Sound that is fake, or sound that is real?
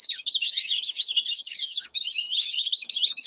fake